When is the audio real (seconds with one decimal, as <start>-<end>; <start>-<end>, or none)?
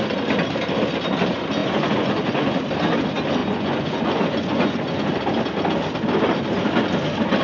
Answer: 0.0-1.6; 2.6-3.4; 5.1-7.4